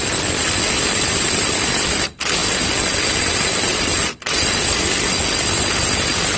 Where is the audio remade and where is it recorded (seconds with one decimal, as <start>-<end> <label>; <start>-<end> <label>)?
0.0-2.4 remade; 2.4-3.2 recorded; 3.2-3.7 remade; 3.7-4.6 recorded; 4.6-6.4 remade